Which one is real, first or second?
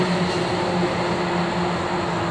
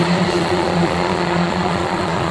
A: first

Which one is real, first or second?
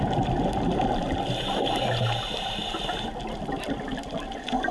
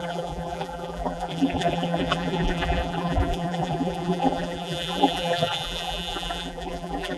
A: first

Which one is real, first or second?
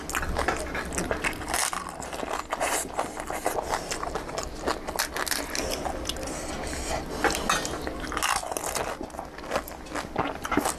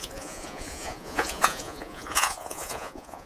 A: first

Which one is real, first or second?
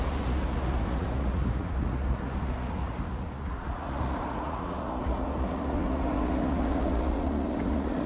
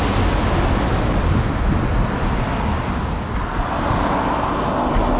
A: second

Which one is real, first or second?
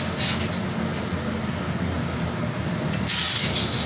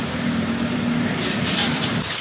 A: first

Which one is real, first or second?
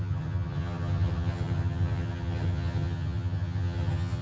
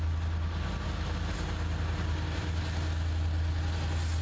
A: second